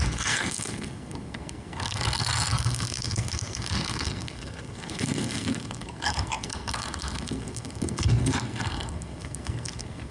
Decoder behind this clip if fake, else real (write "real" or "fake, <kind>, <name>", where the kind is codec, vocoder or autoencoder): fake, codec, SNAC